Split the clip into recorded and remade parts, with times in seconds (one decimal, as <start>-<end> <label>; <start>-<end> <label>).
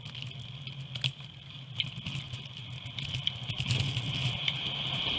0.0-5.2 recorded